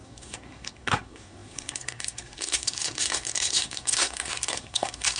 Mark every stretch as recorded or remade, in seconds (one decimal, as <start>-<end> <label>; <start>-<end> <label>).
0.0-5.2 remade